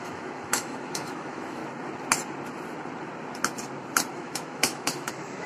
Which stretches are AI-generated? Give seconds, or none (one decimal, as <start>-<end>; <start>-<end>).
0.0-1.6; 4.1-5.5